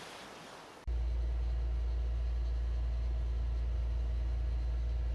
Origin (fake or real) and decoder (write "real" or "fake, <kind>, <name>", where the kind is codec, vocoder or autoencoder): real